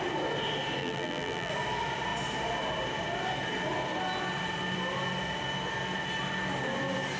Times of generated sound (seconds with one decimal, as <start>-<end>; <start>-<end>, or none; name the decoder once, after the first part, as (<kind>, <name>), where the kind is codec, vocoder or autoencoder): 0.8-1.5 (vocoder, BigVGAN v2)